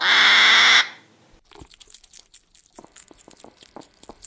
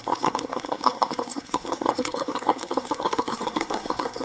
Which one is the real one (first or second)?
first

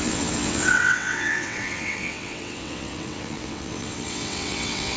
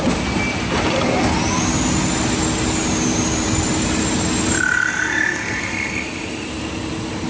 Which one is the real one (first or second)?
second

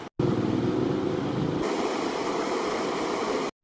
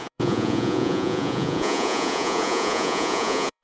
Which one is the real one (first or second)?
first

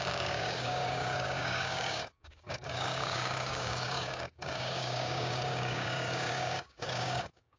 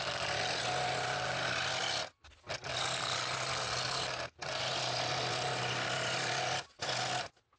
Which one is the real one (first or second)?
second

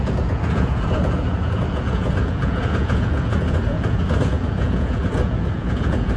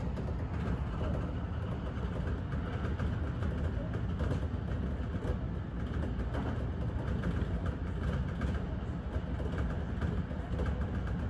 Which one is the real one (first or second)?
second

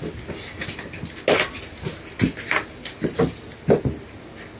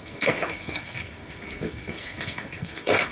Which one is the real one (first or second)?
first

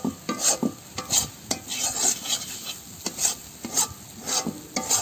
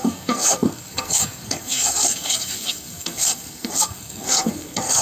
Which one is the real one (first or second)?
first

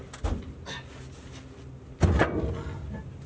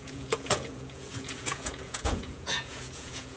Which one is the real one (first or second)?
first